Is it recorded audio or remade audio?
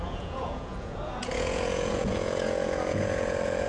remade